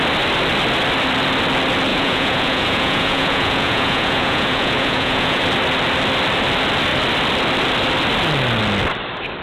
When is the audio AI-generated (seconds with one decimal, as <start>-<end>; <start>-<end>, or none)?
1.9-5.4